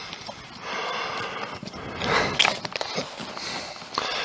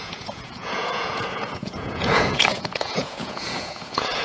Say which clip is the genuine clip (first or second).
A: first